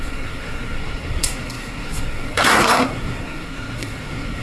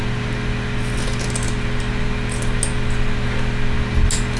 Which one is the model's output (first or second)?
first